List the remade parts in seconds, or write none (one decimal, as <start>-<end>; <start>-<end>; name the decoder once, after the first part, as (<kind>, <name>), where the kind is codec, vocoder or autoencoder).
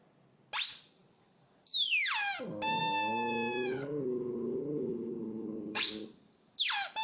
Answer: 3.7-5.9 (codec, HILCodec)